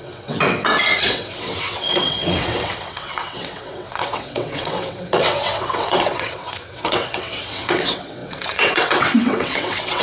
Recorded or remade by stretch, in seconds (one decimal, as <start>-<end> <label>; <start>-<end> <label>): 0.0-10.0 remade